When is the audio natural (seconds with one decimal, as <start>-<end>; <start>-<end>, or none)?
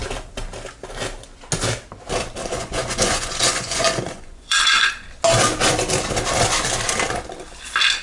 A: 0.0-2.4; 4.9-8.0